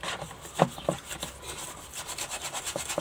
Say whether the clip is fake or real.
real